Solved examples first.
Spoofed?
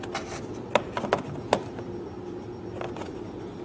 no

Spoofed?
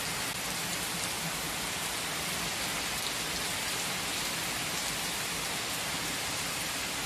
no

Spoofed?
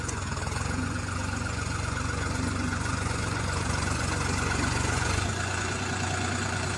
yes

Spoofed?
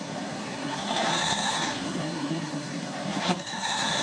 yes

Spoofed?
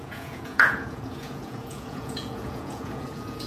yes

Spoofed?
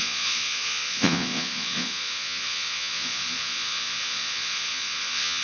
yes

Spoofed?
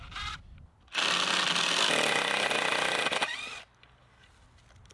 no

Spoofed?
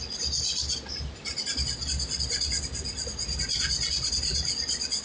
no